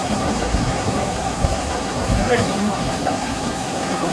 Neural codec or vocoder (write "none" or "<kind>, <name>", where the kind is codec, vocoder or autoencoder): codec, SNAC